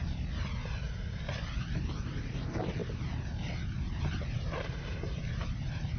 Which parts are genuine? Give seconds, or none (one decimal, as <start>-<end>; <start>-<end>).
0.0-1.4; 2.8-4.0